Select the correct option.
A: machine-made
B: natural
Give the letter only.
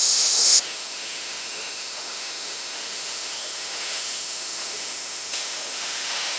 A